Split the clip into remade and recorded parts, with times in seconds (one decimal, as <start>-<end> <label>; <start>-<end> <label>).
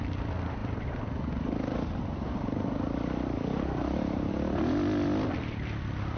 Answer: 0.0-6.2 recorded